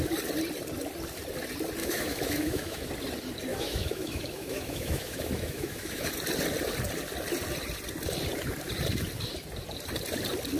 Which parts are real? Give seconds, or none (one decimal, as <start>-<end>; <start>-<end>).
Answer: 0.0-1.8; 2.9-3.5; 6.1-10.6